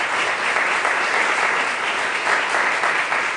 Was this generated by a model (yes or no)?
no